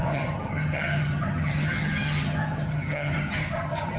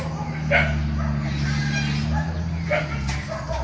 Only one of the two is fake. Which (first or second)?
first